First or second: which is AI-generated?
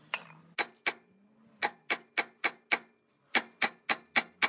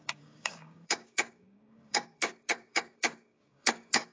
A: second